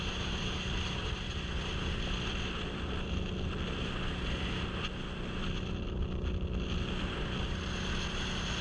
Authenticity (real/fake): real